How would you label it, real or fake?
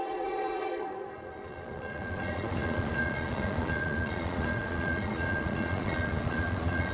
fake